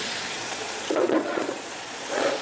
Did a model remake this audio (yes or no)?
yes